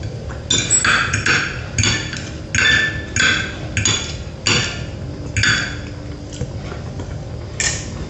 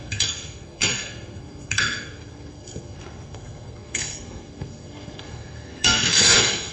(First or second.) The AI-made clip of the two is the second